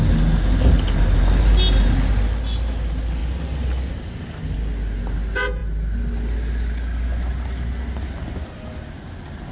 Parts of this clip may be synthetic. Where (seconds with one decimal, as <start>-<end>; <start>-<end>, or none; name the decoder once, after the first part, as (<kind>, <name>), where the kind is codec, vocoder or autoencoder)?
none

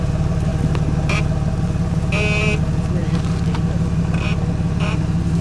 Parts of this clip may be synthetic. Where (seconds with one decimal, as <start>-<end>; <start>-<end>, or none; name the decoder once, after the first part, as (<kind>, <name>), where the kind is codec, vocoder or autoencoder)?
none

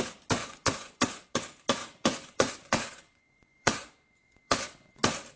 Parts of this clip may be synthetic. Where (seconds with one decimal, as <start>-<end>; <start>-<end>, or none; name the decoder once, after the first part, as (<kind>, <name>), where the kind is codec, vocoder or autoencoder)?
0.4-1.2 (vocoder, Vocos); 1.8-5.0

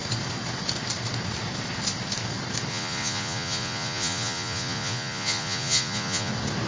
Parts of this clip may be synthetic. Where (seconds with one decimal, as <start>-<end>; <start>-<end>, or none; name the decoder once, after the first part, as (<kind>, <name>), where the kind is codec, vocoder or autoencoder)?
2.7-6.3 (vocoder, Vocos)